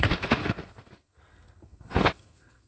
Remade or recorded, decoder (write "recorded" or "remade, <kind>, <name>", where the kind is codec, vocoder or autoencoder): remade, codec, SNAC